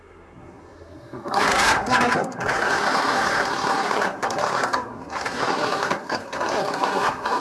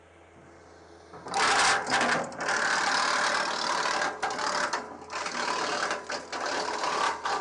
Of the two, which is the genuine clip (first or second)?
second